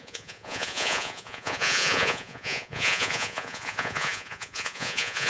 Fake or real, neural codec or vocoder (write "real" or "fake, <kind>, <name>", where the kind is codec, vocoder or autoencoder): fake, vocoder, Vocos